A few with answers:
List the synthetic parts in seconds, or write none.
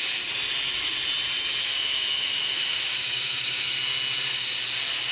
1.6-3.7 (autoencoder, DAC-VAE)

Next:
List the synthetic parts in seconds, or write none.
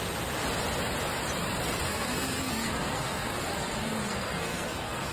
1.9-5.1 (codec, SNAC)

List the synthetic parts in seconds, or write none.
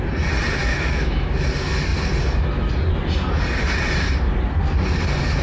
0.7-1.3 (autoencoder, DAC-VAE)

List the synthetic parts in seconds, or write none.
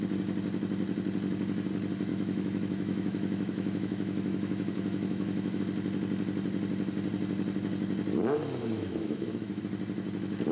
2.1-5.6 (autoencoder, DAC-VAE); 8.4-9.6